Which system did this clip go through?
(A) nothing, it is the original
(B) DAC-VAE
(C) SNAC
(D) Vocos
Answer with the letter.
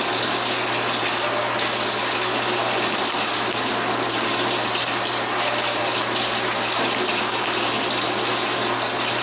A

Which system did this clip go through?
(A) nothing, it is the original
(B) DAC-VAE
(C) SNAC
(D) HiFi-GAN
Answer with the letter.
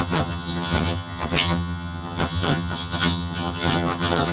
D